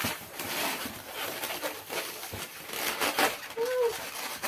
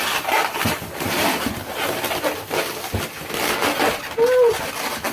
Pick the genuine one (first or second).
second